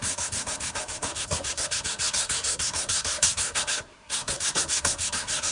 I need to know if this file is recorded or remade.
remade